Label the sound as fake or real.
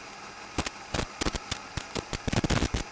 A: real